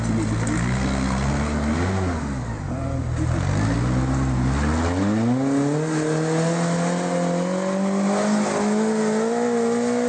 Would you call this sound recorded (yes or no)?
yes